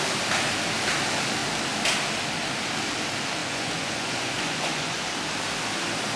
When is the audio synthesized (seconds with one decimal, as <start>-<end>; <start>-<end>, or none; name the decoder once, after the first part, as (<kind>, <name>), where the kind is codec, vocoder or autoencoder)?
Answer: 3.4-5.0 (vocoder, Vocos)